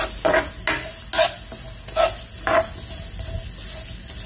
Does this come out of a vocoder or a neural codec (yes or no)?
no